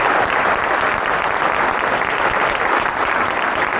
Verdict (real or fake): real